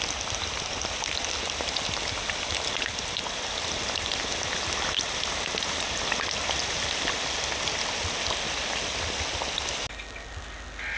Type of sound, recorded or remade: recorded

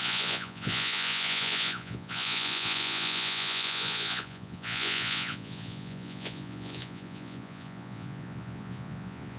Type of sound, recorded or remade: remade